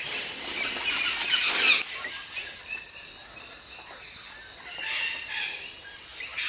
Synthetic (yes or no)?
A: no